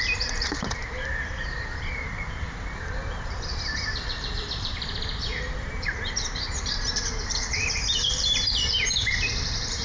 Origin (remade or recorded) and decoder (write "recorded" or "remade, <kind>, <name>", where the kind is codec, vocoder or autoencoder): remade, vocoder, BigVGAN v2